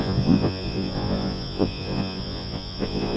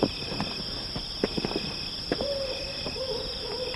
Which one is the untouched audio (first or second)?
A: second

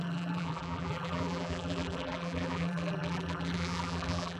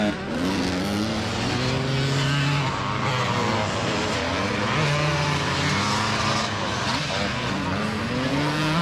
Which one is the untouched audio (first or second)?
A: second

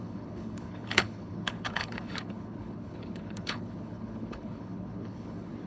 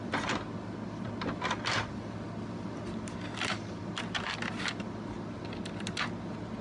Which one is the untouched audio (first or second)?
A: second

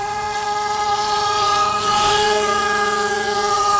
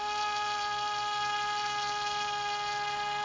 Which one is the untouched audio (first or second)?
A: second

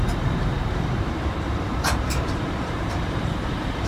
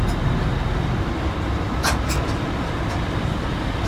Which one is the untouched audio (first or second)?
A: second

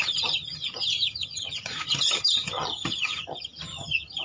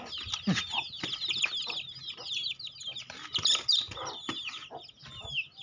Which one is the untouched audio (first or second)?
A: second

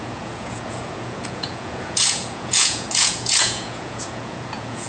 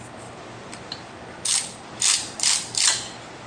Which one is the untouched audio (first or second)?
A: second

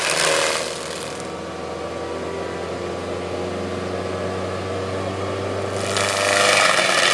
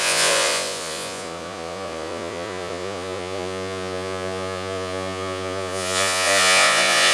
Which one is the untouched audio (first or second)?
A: first